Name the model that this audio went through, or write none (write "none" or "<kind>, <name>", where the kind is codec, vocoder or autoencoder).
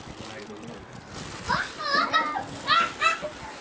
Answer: none